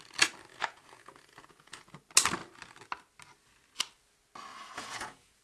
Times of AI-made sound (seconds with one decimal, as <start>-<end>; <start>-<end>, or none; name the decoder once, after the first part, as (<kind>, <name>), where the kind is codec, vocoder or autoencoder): 0.5-1.9 (vocoder, Vocos); 4.5-5.4